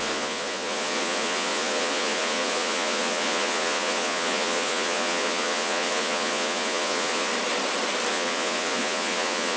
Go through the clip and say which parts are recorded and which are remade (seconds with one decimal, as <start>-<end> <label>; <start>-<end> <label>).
0.0-7.3 remade; 7.3-8.1 recorded; 8.1-9.6 remade